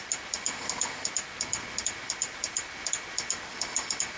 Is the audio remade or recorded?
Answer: recorded